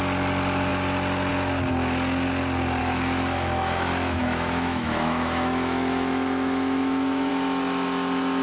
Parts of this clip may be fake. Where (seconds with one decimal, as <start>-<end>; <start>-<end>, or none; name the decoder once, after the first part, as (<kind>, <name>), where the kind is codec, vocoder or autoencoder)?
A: 2.8-7.3 (autoencoder, DAC-VAE)